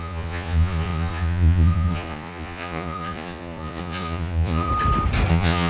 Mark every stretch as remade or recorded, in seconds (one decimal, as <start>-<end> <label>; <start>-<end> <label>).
0.0-4.7 remade; 4.7-5.3 recorded; 5.3-5.7 remade